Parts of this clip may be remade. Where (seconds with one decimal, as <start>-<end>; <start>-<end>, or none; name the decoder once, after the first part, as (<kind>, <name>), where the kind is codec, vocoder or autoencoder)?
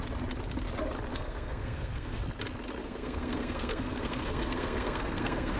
1.1-2.2 (codec, SNAC); 2.8-5.6